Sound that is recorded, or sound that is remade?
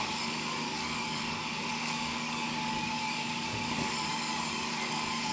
remade